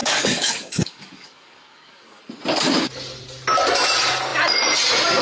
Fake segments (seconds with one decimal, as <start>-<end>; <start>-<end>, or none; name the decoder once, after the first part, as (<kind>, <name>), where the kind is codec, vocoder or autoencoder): 0.0-2.2 (codec, DAC)